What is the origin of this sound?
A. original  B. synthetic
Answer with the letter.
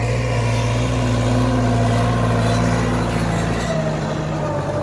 A